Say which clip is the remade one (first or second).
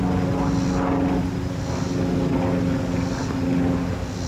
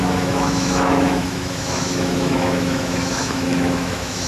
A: second